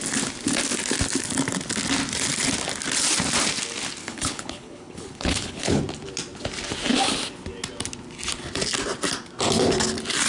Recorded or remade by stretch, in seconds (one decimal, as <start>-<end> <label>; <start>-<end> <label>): 0.0-4.0 recorded; 4.0-5.8 remade; 5.8-10.3 recorded